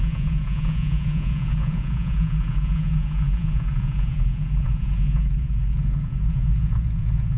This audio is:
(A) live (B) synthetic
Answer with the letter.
B